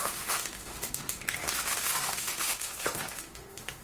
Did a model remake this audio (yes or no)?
yes